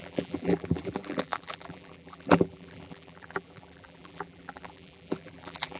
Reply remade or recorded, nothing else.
remade